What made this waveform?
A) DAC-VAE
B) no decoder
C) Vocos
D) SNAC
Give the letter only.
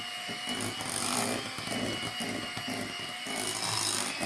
B